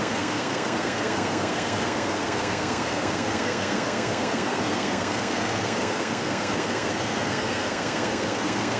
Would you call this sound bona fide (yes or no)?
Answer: no